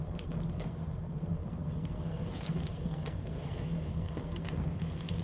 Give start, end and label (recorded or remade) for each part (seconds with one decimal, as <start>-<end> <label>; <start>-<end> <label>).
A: 0.0-5.2 remade